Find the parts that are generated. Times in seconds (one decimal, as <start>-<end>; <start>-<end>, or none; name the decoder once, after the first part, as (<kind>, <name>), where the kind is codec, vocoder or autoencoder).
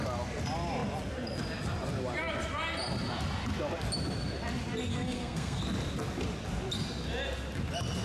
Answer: 4.9-5.6 (codec, SNAC)